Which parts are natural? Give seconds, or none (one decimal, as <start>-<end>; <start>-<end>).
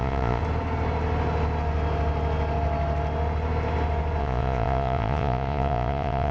0.4-4.2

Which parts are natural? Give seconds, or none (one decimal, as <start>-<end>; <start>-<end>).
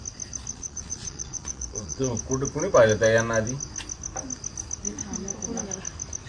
0.0-0.5; 2.1-6.3